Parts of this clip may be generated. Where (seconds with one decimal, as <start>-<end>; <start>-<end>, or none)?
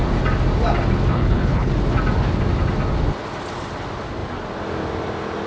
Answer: 1.1-1.7